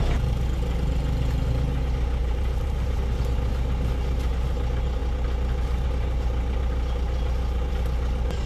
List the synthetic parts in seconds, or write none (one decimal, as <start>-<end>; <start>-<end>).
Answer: 2.2-3.0